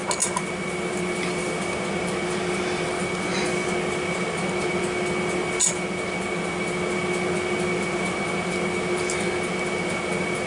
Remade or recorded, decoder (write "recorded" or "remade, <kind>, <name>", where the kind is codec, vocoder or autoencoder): recorded